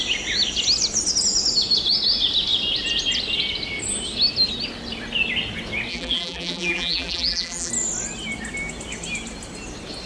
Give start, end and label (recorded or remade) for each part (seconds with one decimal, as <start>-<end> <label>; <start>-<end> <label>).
0.0-5.9 recorded; 5.9-7.7 remade; 7.7-10.1 recorded